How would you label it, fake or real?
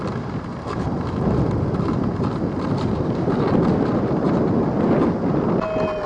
real